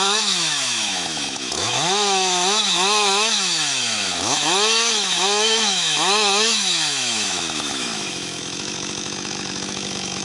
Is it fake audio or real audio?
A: fake